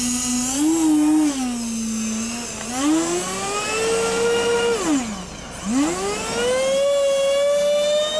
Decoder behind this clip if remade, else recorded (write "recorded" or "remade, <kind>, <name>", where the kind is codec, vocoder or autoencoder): recorded